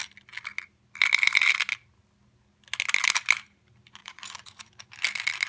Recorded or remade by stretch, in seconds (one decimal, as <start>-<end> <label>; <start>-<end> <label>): 0.0-4.0 recorded; 4.0-4.7 remade; 4.7-5.5 recorded